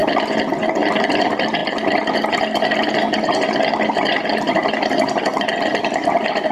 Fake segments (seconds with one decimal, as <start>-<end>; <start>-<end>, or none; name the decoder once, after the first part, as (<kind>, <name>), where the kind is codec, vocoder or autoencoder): 0.5-1.6 (vocoder, BigVGAN v2); 5.5-6.5